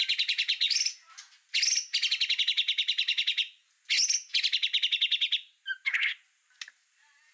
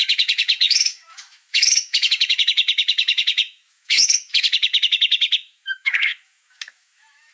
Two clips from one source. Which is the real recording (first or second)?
first